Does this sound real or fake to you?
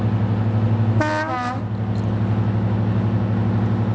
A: real